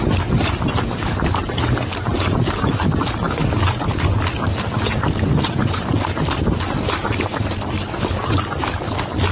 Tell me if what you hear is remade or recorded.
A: recorded